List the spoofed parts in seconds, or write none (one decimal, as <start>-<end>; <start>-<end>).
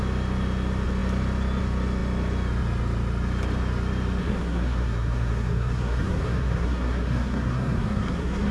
4.2-8.5